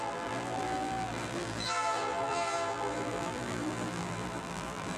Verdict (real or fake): fake